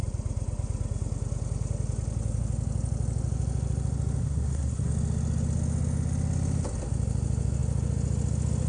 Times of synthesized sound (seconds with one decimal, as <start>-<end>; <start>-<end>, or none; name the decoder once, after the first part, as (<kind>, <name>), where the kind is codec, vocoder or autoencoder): 4.2-4.9 (codec, SNAC)